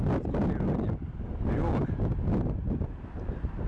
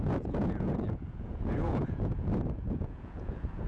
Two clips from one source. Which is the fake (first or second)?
second